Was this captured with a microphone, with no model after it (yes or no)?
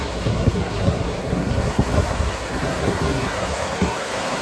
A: no